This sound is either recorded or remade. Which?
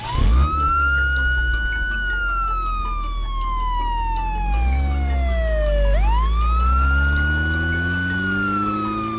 recorded